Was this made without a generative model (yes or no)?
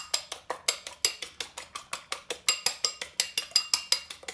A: yes